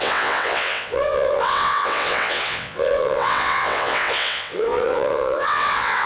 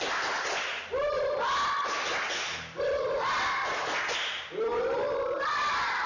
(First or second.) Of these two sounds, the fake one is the first